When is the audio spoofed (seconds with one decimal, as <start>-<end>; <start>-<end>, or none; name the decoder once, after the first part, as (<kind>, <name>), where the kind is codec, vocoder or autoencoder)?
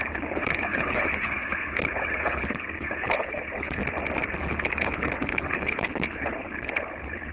0.0-3.8 (codec, HILCodec); 4.4-7.3